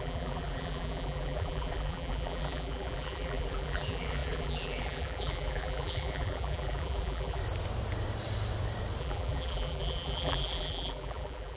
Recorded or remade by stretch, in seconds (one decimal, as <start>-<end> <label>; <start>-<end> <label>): 0.0-7.4 remade; 7.4-9.0 recorded; 9.0-11.6 remade